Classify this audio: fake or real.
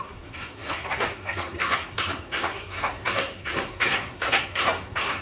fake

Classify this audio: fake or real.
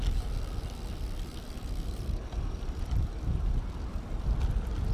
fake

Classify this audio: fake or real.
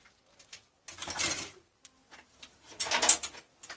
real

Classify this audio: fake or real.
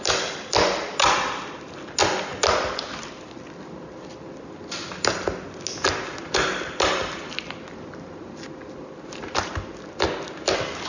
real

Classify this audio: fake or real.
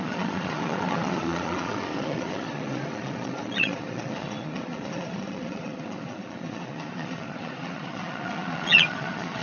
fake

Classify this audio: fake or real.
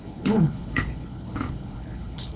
fake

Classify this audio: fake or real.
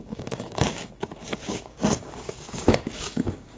fake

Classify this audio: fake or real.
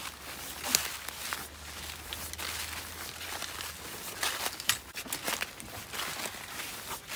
real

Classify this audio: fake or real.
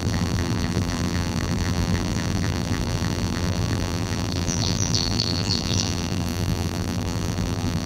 fake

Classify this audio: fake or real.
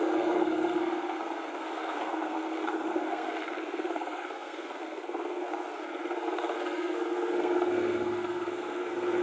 fake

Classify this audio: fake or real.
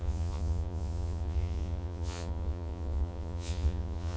fake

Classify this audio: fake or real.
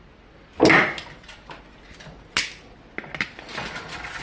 real